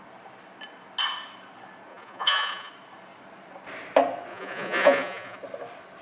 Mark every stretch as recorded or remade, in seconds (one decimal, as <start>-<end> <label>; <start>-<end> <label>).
0.0-1.9 recorded; 1.9-2.7 remade; 2.7-4.3 recorded; 4.3-5.4 remade; 5.4-6.0 recorded